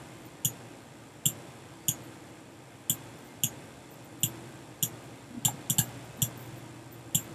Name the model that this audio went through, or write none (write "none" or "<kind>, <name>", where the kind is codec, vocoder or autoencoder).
none